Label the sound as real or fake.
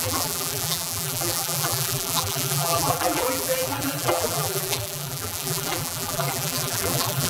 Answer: fake